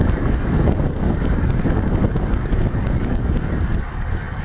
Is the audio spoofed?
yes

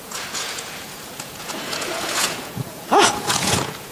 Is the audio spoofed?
yes